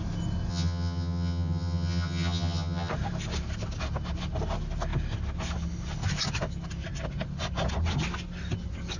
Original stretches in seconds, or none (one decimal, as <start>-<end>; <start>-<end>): 0.0-0.5; 2.9-9.0